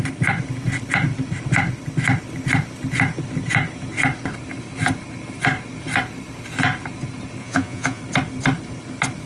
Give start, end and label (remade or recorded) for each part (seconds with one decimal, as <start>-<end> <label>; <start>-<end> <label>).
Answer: 0.0-7.4 recorded; 7.4-8.0 remade; 8.0-9.3 recorded